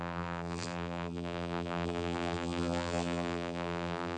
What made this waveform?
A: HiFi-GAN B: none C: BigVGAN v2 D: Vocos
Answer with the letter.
C